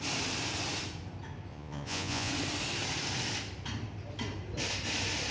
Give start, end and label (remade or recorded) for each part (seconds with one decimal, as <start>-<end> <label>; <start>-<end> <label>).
0.0-1.5 recorded; 1.5-2.3 remade; 2.3-5.3 recorded